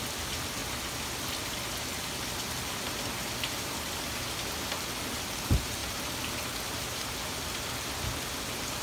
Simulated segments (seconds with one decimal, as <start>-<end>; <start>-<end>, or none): none